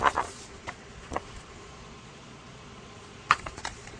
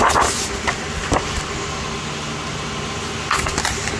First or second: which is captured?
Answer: second